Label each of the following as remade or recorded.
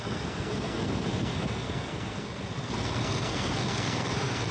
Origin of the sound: remade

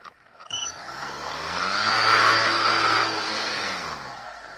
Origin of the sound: remade